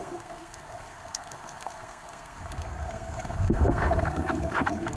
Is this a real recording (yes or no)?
no